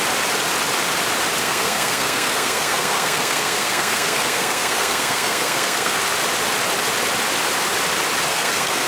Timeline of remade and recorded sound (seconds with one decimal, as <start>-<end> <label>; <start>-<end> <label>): 0.0-1.4 recorded; 1.4-6.0 remade; 6.0-8.3 recorded; 8.3-8.9 remade